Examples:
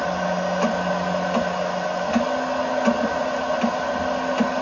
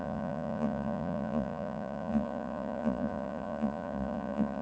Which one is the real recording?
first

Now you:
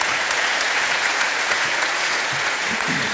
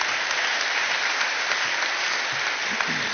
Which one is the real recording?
second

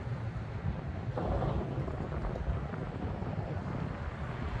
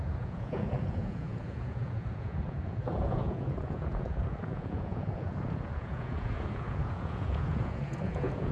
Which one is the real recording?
first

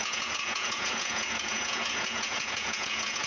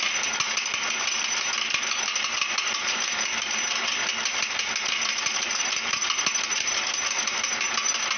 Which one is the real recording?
second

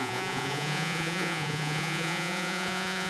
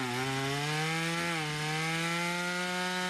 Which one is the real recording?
second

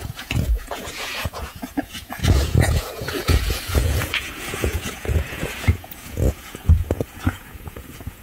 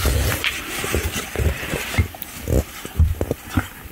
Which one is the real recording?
second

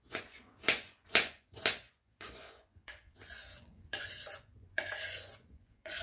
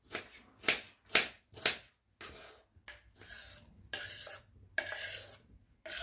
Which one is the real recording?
second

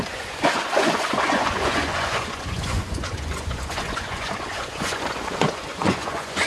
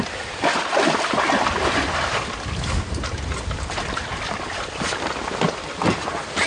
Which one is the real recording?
second